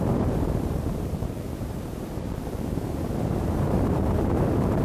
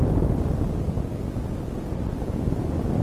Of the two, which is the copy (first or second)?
first